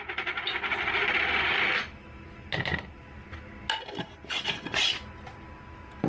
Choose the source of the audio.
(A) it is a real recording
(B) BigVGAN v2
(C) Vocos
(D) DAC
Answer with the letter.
A